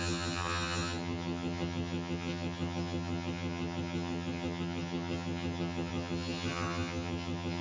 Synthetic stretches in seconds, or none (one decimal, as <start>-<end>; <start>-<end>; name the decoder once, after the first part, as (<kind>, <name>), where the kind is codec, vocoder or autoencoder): 0.0-7.6 (vocoder, HiFi-GAN)